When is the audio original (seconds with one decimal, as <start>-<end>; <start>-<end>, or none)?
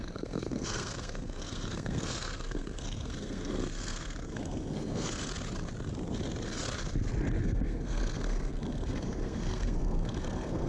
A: 5.3-7.4